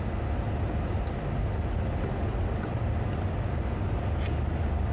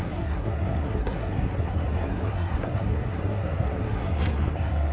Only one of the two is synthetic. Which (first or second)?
second